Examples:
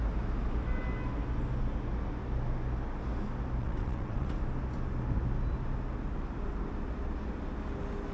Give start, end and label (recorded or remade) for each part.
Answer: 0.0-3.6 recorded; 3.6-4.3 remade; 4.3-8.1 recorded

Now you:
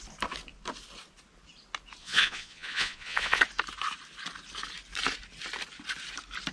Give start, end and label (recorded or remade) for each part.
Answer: 0.0-2.0 recorded; 2.0-3.4 remade; 3.4-6.5 recorded